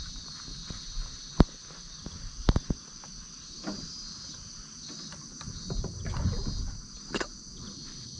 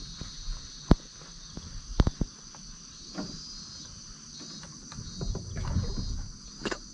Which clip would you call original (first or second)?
second